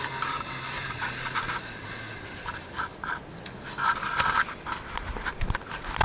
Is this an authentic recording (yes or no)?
yes